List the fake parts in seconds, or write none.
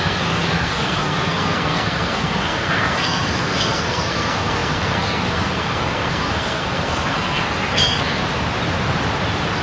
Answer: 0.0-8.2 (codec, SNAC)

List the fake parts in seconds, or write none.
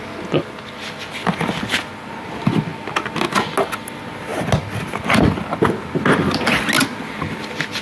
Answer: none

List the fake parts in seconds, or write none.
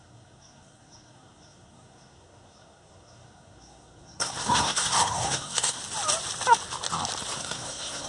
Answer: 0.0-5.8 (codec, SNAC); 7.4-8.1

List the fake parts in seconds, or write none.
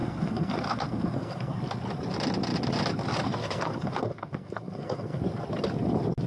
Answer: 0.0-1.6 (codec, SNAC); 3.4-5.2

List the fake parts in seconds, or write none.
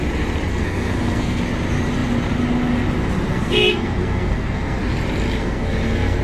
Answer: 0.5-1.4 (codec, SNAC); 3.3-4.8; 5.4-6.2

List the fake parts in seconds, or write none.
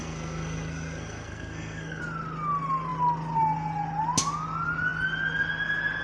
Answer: 0.0-2.0 (codec, SNAC)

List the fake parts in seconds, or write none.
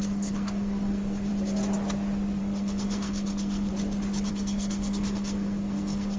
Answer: 0.0-1.3 (codec, SNAC); 2.4-3.7; 4.3-6.2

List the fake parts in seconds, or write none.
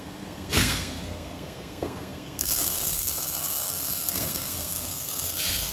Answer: 0.0-5.7 (codec, SNAC)